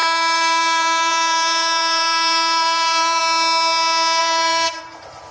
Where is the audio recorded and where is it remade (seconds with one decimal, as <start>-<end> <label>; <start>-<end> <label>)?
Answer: 0.0-3.2 remade; 3.2-4.2 recorded; 4.2-4.8 remade; 4.8-5.3 recorded